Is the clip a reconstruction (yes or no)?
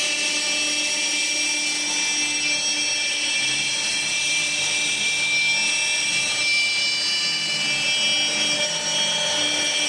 no